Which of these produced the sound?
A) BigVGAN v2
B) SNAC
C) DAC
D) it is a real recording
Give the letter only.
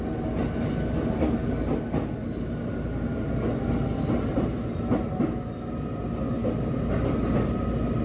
D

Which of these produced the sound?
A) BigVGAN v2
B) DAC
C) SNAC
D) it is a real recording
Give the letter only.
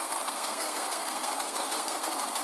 C